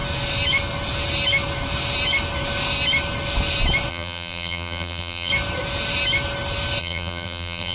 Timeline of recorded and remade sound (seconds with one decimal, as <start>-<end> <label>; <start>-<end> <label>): 0.0-3.9 recorded; 3.9-5.3 remade; 5.3-6.8 recorded; 6.8-7.7 remade